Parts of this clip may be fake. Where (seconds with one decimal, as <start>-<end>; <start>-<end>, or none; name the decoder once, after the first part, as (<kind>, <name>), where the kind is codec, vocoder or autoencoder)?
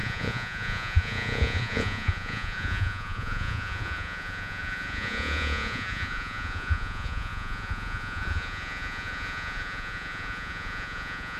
0.0-11.4 (vocoder, Vocos)